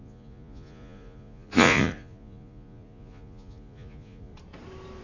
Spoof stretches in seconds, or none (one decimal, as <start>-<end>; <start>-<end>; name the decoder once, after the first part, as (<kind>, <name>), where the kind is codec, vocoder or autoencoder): 0.0-4.3 (vocoder, Vocos)